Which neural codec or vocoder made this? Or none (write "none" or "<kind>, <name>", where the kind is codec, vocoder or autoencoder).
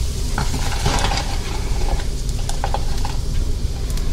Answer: vocoder, BigVGAN v2